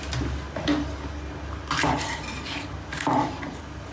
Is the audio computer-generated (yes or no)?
no